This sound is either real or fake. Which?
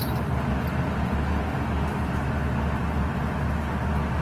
real